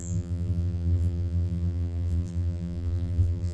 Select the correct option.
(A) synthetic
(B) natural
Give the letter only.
A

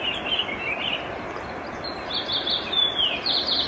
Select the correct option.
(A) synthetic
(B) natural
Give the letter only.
B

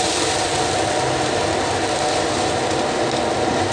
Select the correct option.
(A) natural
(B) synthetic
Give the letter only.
A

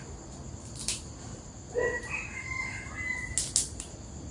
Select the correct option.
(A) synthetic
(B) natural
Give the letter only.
B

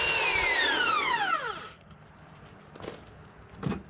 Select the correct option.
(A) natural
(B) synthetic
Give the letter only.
A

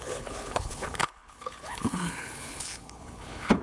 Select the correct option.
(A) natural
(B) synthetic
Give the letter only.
B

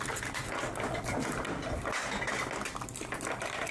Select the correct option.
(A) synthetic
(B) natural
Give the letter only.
B